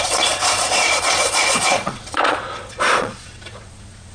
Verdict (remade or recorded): remade